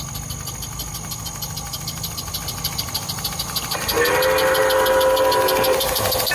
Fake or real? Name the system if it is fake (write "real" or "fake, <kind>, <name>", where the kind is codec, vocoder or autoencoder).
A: real